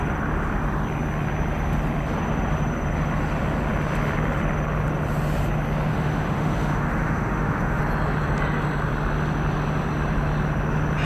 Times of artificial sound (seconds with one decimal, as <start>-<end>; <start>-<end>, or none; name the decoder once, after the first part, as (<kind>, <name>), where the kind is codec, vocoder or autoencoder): 5.9-7.8 (autoencoder, DAC-VAE)